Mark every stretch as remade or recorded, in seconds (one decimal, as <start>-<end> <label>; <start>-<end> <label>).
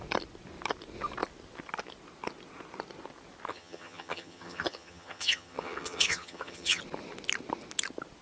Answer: 0.0-3.5 recorded; 3.5-6.8 remade; 6.8-8.2 recorded